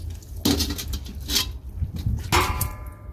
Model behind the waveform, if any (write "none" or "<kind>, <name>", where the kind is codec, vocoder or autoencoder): none